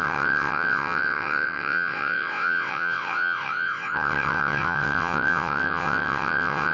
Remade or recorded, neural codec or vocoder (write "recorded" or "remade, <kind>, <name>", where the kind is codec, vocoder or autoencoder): remade, vocoder, WaveNeXt